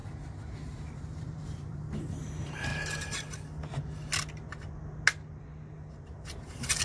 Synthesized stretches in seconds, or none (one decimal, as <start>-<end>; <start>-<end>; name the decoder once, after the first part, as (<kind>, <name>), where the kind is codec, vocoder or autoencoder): 1.0-2.7 (vocoder, BigVGAN v2); 5.9-6.8